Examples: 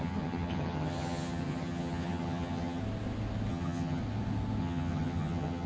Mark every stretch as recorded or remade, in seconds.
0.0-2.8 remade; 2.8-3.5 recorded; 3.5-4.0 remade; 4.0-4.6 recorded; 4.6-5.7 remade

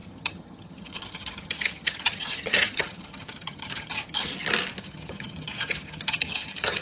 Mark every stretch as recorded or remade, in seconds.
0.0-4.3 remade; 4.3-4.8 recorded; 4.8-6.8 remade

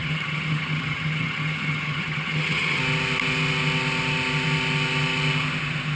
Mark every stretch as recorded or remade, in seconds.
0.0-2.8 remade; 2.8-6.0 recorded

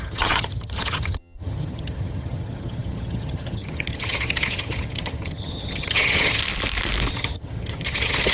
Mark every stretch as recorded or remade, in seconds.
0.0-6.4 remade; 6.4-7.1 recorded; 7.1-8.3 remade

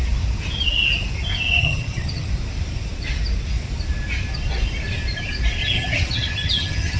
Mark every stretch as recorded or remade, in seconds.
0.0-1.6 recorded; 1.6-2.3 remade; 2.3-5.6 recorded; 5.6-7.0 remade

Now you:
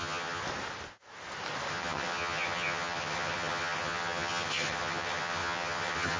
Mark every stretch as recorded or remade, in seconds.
0.0-0.4 remade; 0.4-1.7 recorded; 1.7-6.2 remade